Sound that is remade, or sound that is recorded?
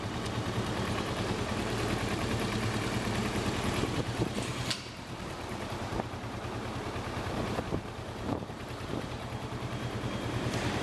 remade